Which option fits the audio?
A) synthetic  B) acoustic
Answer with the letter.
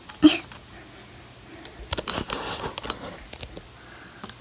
B